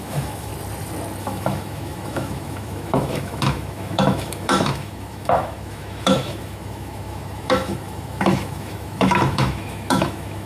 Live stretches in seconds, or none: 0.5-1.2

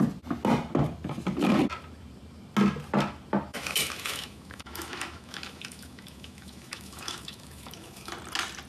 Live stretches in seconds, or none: 0.0-3.5; 8.1-8.7